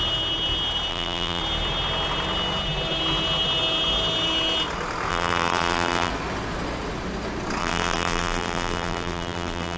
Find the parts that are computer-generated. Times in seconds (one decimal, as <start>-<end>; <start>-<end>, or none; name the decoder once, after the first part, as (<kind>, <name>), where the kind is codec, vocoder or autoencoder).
0.9-1.4 (vocoder, BigVGAN v2); 5.1-6.1; 7.6-9.8